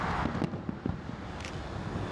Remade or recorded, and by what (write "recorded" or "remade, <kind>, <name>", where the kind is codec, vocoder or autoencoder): recorded